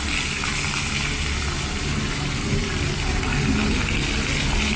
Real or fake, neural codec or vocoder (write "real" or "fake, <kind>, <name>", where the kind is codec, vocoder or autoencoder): real